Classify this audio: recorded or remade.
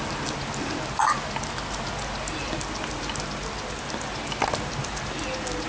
recorded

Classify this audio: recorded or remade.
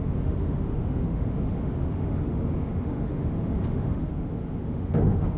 remade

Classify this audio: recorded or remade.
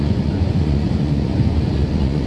remade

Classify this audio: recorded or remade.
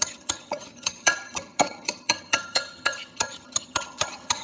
remade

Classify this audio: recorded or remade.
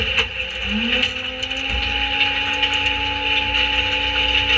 recorded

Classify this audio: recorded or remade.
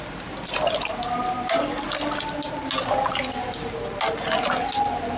recorded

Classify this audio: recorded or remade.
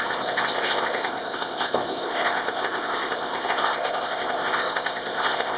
remade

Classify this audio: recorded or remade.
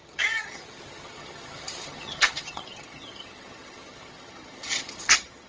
remade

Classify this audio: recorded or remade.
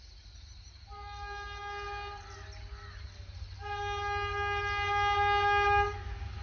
recorded